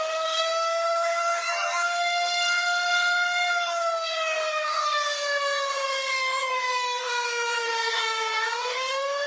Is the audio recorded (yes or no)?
no